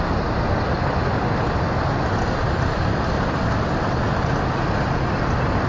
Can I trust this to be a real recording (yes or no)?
yes